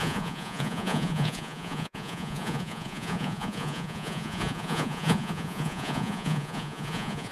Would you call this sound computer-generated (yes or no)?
yes